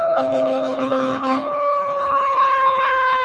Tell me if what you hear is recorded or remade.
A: remade